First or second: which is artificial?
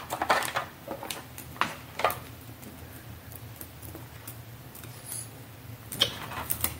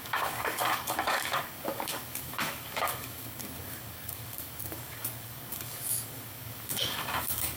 second